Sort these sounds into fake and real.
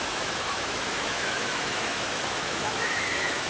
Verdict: fake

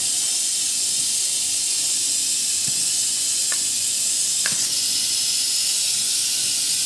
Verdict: fake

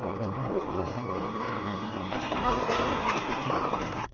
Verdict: fake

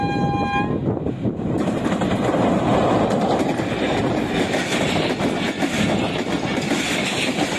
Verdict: real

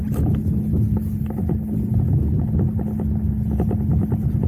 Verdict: real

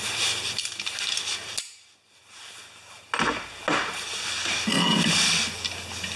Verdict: real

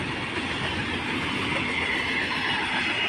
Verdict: real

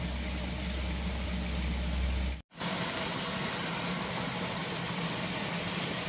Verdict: real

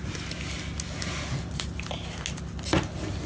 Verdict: real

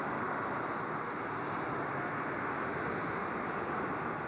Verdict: real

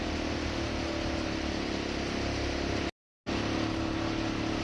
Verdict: real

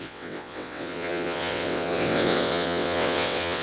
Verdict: fake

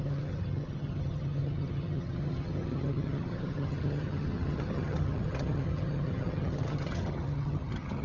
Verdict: fake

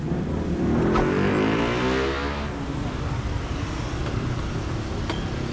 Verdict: real